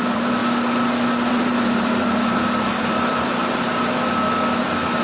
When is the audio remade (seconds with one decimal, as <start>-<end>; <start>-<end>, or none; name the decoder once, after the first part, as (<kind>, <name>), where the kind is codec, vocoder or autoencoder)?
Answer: 0.0-0.4 (vocoder, BigVGAN v2); 1.3-3.7